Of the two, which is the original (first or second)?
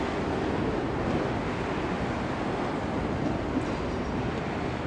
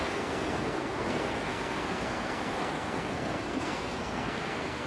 first